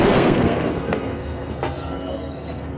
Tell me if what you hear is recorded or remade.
remade